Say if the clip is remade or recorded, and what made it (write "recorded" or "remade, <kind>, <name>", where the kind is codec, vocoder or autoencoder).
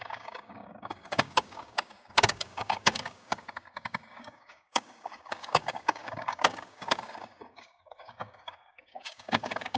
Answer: remade, codec, DAC